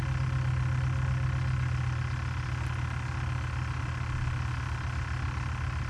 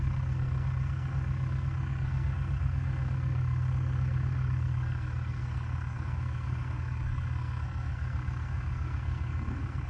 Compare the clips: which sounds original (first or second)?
first